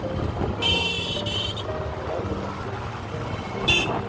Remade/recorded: recorded